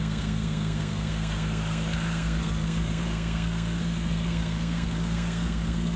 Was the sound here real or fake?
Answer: fake